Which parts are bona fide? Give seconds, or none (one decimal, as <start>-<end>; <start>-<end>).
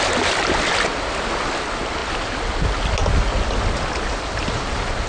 0.0-5.1